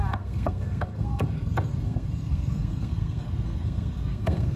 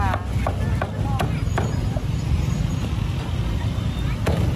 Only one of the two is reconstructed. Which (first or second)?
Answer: first